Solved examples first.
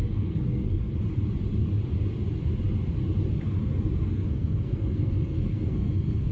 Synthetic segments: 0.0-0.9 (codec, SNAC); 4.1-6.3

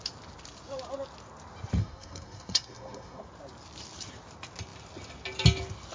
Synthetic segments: 1.8-3.2 (codec, SNAC)

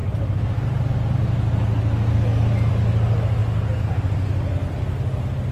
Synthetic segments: none

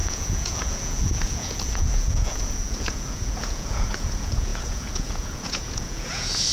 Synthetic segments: 0.0-6.5 (vocoder, Vocos)

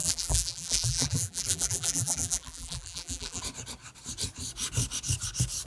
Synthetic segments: 0.0-3.4 (vocoder, BigVGAN v2)

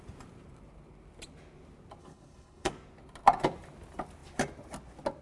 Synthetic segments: 2.0-2.7 (codec, HILCodec)

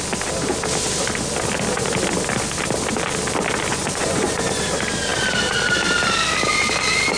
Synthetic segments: 3.7-4.6 (vocoder, Vocos)

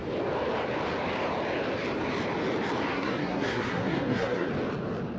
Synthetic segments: 2.9-4.5 (codec, SNAC)